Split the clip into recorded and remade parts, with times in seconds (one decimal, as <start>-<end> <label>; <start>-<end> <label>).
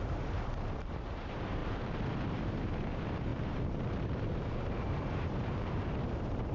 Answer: 0.0-1.6 remade; 1.6-2.3 recorded; 2.3-6.5 remade